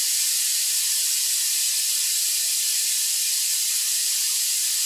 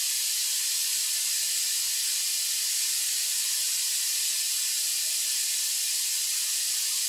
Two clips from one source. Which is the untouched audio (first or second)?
second